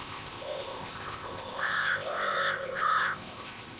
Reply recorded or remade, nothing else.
remade